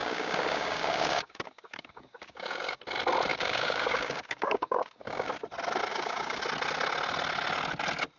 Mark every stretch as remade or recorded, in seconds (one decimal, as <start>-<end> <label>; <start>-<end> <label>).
0.0-2.8 remade; 2.8-3.3 recorded; 3.3-5.3 remade; 5.3-5.9 recorded; 5.9-6.4 remade; 6.4-8.2 recorded